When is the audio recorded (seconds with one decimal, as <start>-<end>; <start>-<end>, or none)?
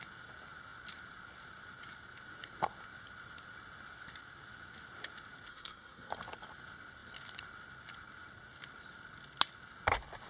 0.0-5.5; 6.1-10.3